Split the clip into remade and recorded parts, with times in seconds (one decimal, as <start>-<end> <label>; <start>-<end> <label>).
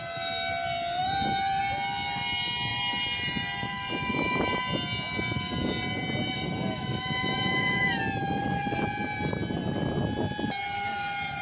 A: 0.0-1.0 recorded; 1.0-1.6 remade; 1.6-2.7 recorded; 2.7-4.6 remade; 4.6-6.9 recorded; 6.9-8.0 remade; 8.0-11.4 recorded